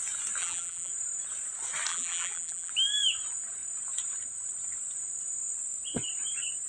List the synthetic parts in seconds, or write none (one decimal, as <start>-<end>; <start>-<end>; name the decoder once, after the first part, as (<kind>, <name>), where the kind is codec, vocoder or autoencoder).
0.4-0.9 (vocoder, BigVGAN v2); 1.9-2.7